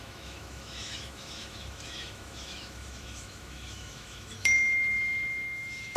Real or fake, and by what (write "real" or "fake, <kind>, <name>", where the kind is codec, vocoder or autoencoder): fake, autoencoder, DAC-VAE